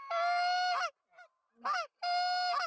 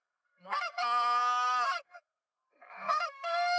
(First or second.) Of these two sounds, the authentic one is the first